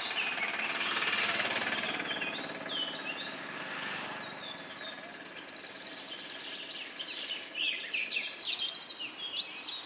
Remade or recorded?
recorded